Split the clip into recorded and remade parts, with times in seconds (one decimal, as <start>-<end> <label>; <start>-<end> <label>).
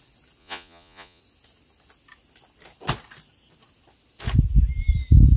0.0-0.4 recorded; 0.4-1.2 remade; 1.2-5.4 recorded